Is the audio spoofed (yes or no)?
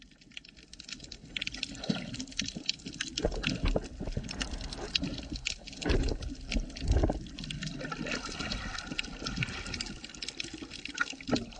no